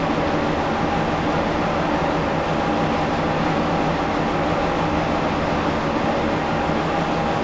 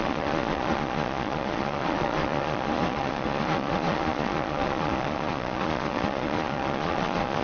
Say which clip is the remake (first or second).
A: second